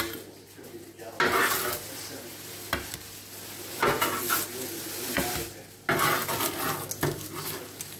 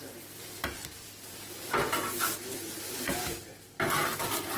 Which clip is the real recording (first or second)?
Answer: first